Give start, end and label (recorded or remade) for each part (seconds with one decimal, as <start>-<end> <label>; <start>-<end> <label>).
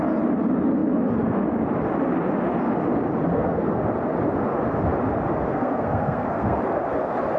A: 0.0-3.3 recorded; 3.3-3.8 remade; 3.8-5.5 recorded; 5.5-6.6 remade; 6.6-7.4 recorded